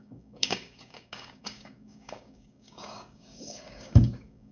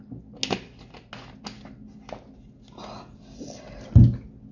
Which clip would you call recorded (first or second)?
second